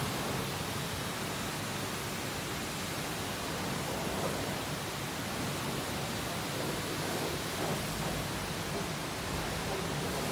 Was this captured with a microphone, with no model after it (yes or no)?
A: yes